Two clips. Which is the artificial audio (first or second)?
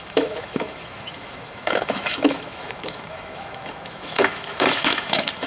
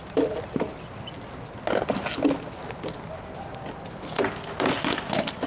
first